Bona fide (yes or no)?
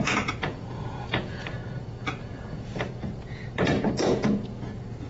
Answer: no